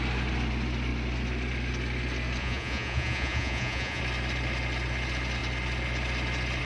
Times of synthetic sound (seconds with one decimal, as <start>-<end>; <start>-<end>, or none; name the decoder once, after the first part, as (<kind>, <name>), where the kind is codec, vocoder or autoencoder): 2.4-4.0 (vocoder, Vocos)